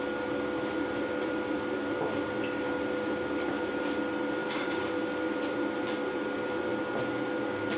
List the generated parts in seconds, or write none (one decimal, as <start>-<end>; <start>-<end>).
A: 4.4-4.9